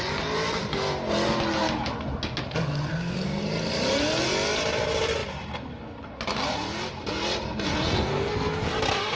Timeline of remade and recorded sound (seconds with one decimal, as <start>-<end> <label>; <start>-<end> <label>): 0.0-2.9 recorded; 2.9-3.4 remade; 3.4-8.1 recorded; 8.1-8.7 remade; 8.7-9.2 recorded